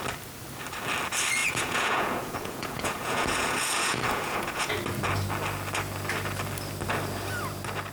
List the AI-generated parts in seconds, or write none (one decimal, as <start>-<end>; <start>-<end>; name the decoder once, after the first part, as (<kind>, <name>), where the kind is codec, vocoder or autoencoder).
1.4-4.7 (vocoder, Vocos)